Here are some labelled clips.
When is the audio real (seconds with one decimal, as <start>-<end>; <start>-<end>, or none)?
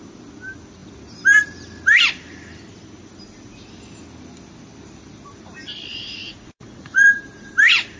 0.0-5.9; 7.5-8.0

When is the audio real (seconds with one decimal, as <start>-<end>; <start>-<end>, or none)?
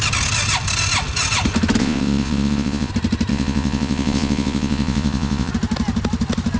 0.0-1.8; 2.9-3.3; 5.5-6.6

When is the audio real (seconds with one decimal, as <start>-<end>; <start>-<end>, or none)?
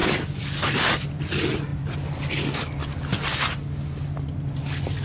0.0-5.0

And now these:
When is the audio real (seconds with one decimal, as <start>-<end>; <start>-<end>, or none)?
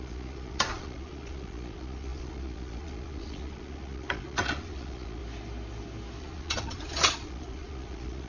5.2-6.2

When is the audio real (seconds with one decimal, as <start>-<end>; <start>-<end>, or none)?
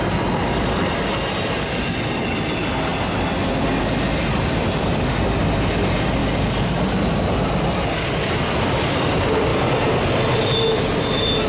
0.0-11.5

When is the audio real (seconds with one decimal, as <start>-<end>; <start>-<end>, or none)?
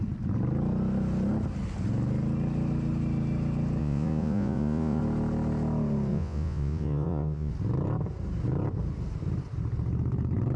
0.0-3.8; 5.0-6.1; 7.5-10.6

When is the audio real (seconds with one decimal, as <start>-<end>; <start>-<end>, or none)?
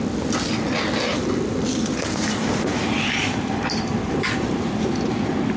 0.0-1.1; 4.5-5.6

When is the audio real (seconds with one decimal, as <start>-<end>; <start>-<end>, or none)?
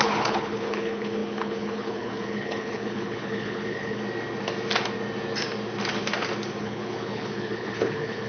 4.0-6.6